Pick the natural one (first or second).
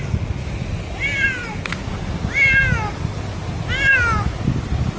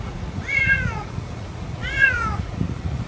first